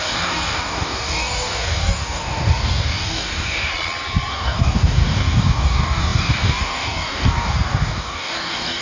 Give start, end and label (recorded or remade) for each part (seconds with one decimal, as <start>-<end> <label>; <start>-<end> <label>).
0.0-3.7 remade; 3.7-4.3 recorded; 4.3-8.8 remade